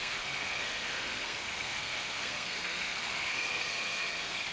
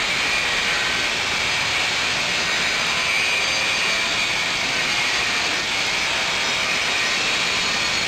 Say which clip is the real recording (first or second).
second